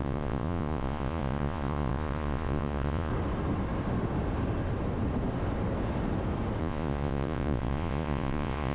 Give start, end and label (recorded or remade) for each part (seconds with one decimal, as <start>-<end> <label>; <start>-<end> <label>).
0.0-3.1 remade; 3.1-6.6 recorded; 6.6-8.7 remade